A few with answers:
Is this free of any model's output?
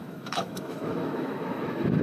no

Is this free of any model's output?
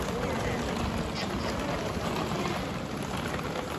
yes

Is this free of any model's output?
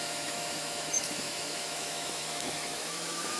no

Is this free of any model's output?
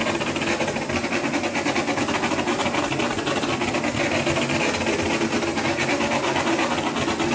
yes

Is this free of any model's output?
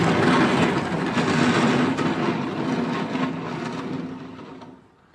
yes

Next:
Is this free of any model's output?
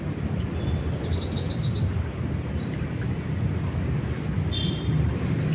yes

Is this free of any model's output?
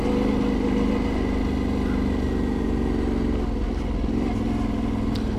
yes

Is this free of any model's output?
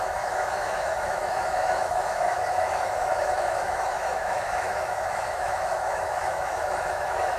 no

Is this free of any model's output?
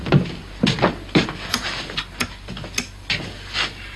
yes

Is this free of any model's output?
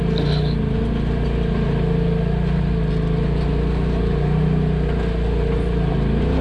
yes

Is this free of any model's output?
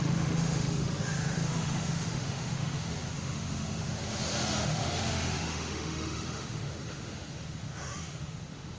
no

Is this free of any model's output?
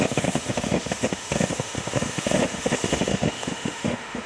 no